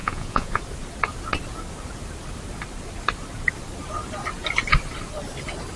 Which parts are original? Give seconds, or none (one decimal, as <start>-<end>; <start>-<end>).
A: 0.6-5.8